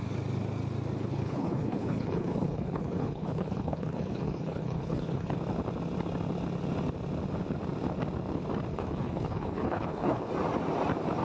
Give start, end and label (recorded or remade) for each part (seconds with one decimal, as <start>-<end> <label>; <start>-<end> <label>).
0.0-1.0 recorded; 1.0-5.3 remade; 5.3-8.7 recorded; 8.7-10.3 remade; 10.3-11.2 recorded